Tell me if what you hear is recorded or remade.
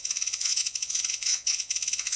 remade